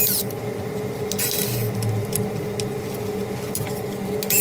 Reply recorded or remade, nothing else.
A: recorded